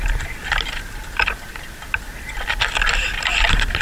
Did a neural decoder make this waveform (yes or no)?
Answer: no